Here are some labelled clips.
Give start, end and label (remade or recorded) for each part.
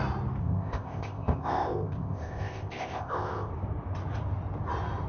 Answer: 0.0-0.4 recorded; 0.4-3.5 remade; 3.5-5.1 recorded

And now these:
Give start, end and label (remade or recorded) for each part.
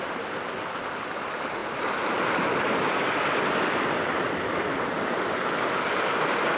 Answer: 0.0-6.6 recorded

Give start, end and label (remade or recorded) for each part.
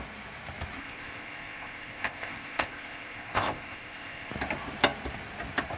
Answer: 0.0-0.8 recorded; 0.8-4.3 remade; 4.3-5.8 recorded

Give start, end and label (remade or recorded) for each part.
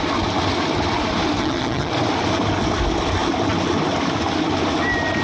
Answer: 0.0-1.4 recorded; 1.4-1.9 remade; 1.9-5.2 recorded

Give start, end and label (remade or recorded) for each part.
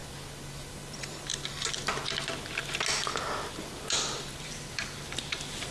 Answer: 0.0-0.7 recorded; 0.7-1.3 remade; 1.3-4.3 recorded; 4.3-5.7 remade